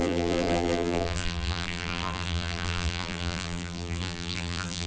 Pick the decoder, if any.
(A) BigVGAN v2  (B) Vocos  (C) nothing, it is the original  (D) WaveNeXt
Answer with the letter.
A